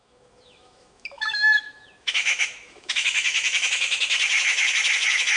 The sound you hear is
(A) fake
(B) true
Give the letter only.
A